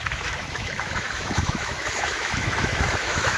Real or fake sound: fake